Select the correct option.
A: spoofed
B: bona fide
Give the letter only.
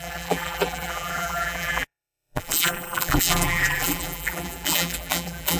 A